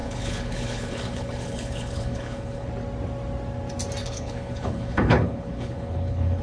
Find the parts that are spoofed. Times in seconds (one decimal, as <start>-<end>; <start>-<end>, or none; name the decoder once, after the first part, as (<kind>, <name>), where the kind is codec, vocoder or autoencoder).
0.0-2.7 (codec, HILCodec); 4.0-6.4